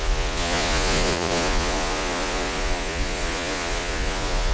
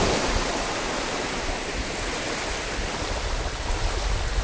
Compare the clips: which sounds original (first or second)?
second